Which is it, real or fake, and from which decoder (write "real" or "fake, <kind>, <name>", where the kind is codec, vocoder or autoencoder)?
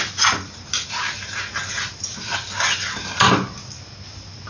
real